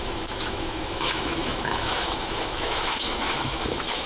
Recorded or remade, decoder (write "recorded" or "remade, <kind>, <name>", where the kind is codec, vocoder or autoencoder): remade, autoencoder, DAC-VAE